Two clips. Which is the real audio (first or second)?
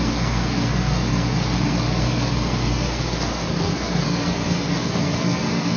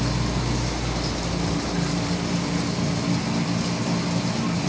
second